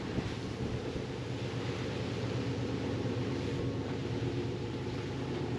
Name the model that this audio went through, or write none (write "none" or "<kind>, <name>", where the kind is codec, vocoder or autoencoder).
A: vocoder, BigVGAN v2